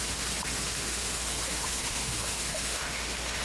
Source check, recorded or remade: remade